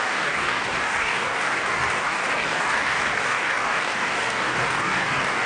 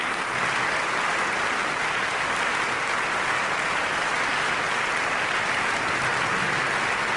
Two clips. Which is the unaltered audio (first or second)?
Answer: second